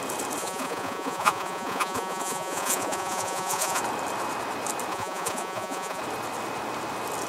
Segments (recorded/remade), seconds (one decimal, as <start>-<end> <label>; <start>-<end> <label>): 0.0-0.4 recorded; 0.4-3.8 remade; 3.8-4.9 recorded; 4.9-6.0 remade; 6.0-7.3 recorded